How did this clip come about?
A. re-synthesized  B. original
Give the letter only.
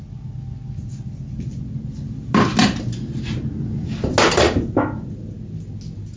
B